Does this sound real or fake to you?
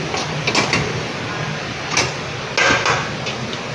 real